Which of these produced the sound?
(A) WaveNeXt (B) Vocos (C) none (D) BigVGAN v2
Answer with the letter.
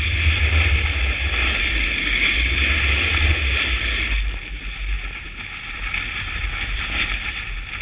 C